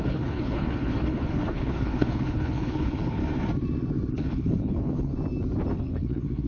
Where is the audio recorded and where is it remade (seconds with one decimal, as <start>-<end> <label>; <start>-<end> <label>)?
0.0-3.2 remade; 3.2-4.1 recorded; 4.1-5.1 remade; 5.1-5.7 recorded; 5.7-6.5 remade